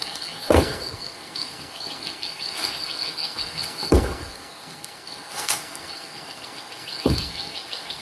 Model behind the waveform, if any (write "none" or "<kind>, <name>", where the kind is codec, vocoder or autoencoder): codec, SNAC